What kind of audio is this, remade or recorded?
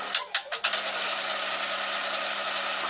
recorded